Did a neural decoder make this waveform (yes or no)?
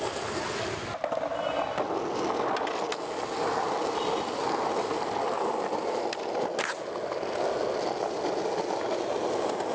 no